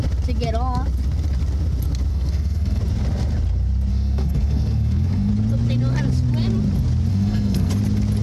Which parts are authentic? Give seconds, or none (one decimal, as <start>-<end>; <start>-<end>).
0.0-2.1; 2.8-3.9; 5.3-7.1; 7.7-8.2